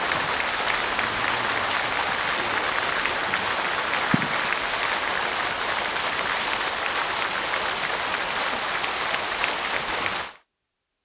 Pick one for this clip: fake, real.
real